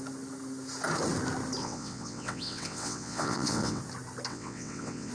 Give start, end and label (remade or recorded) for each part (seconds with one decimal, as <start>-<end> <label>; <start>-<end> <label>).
0.0-1.6 recorded; 1.6-3.8 remade; 3.8-4.3 recorded; 4.3-5.1 remade